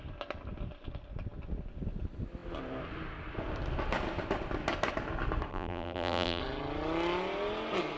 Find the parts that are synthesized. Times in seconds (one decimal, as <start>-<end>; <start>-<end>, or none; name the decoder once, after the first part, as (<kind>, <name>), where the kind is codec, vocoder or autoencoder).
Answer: 5.5-6.4 (vocoder, BigVGAN v2)